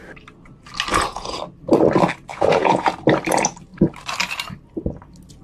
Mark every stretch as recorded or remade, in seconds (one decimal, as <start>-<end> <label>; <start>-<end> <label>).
0.0-0.9 recorded; 0.9-1.4 remade; 1.4-2.3 recorded; 2.3-2.9 remade; 2.9-5.4 recorded